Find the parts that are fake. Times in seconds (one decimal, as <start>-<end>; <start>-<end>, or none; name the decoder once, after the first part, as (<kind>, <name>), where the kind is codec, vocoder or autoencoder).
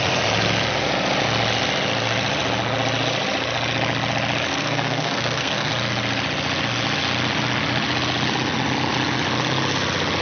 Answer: 4.5-5.7 (codec, SNAC)